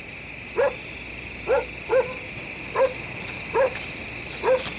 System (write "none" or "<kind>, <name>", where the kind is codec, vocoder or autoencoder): none